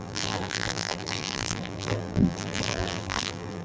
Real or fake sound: fake